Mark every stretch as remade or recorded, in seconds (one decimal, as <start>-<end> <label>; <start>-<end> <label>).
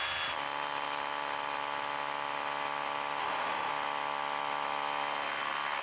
0.0-3.2 recorded; 3.2-3.7 remade; 3.7-5.8 recorded